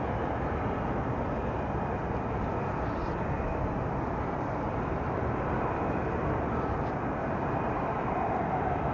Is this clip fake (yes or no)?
no